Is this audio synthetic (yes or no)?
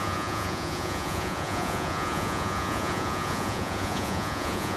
yes